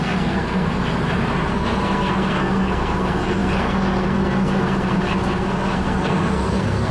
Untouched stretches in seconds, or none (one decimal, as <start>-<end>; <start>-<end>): 0.8-1.5